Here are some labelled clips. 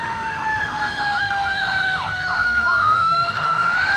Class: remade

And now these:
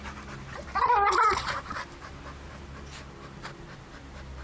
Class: recorded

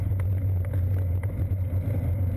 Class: recorded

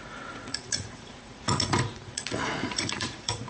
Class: remade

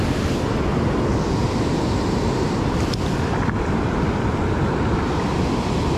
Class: recorded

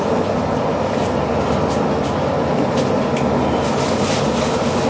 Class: recorded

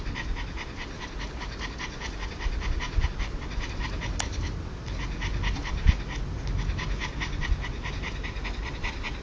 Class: recorded